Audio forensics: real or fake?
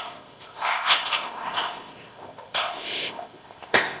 fake